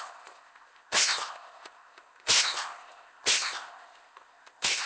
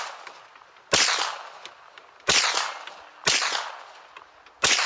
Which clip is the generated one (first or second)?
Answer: first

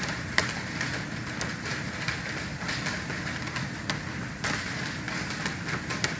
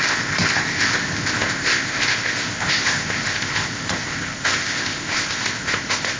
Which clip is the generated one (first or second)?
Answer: second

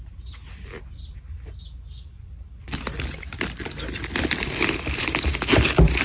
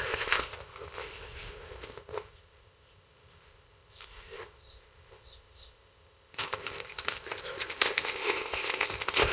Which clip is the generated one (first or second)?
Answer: second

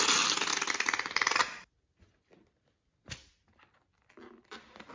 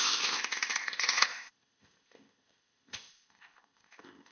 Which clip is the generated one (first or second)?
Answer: second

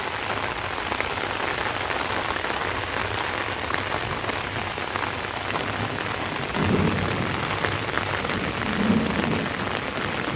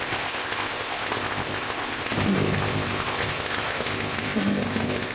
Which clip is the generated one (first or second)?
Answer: second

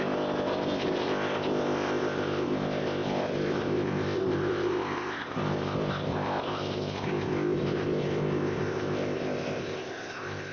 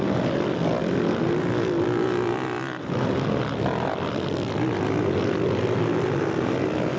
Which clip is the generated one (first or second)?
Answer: first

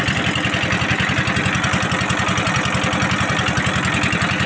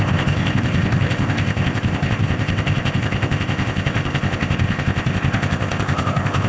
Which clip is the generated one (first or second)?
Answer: second